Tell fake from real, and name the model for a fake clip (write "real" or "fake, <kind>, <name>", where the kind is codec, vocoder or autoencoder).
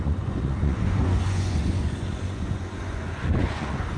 fake, vocoder, Vocos